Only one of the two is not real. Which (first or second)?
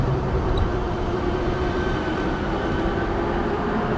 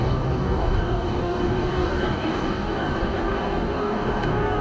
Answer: second